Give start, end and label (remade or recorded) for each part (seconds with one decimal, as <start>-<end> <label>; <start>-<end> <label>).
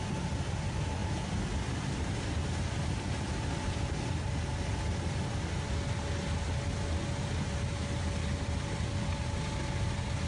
0.0-10.3 recorded